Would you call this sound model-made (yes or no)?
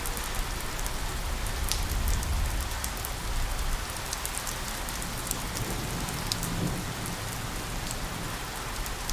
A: no